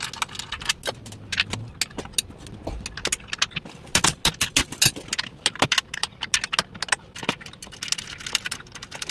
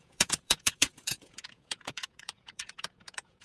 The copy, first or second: second